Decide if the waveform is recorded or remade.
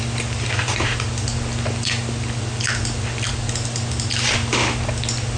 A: recorded